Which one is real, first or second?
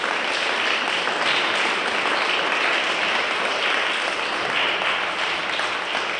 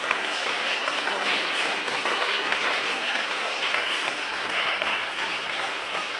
first